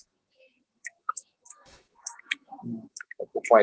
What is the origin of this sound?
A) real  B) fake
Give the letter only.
B